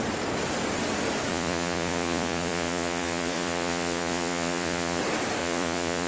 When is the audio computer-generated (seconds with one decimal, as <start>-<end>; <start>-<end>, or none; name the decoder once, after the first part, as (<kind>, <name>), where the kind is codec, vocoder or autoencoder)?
1.3-5.0 (vocoder, Vocos); 5.4-6.1